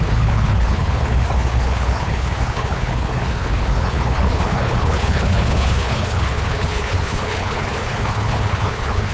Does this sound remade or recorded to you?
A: remade